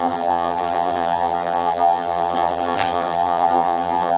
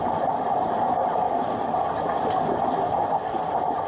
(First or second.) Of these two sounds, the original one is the second